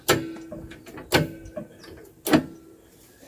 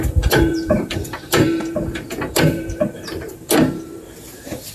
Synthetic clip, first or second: second